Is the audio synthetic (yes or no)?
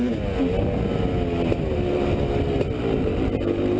no